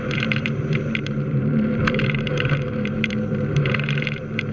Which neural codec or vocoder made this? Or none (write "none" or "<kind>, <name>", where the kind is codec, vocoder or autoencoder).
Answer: vocoder, BigVGAN v2